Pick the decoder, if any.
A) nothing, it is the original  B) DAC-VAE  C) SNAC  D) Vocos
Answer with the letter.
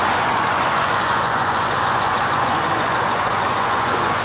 D